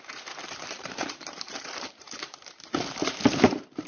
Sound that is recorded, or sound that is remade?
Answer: remade